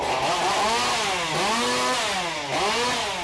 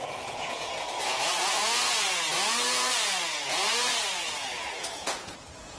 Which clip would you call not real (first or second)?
second